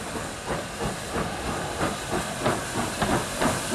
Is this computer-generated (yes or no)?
no